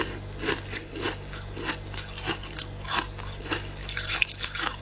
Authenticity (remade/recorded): recorded